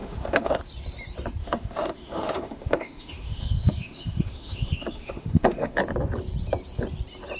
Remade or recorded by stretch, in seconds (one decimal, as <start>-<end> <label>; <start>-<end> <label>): 0.0-0.6 remade; 0.6-1.4 recorded; 1.4-5.8 remade; 5.8-7.4 recorded

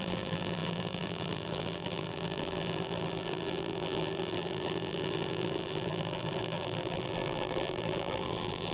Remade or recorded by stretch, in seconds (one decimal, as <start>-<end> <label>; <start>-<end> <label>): 0.0-8.7 remade

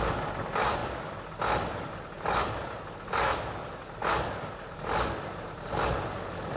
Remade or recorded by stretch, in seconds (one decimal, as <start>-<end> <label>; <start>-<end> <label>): 0.0-6.6 recorded

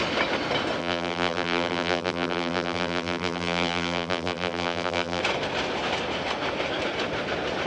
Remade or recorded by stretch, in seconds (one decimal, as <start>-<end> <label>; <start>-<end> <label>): 0.0-0.8 recorded; 0.8-5.2 remade; 5.2-7.7 recorded

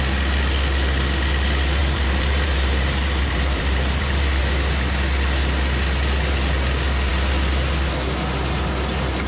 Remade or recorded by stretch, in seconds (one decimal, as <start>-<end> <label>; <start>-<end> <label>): 0.0-1.8 recorded; 1.8-4.4 remade; 4.4-9.3 recorded

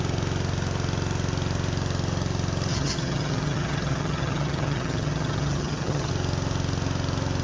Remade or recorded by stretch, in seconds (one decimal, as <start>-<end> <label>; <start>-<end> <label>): 0.0-2.7 recorded; 2.7-6.1 remade; 6.1-7.4 recorded